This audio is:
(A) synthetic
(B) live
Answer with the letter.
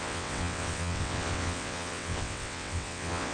A